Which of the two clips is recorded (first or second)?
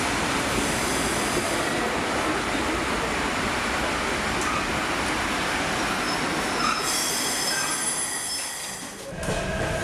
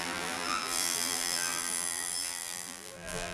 first